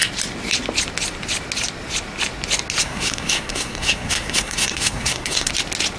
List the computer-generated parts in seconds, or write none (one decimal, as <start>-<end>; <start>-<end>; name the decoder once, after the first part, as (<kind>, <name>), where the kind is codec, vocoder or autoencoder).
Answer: 2.8-5.5 (codec, SNAC)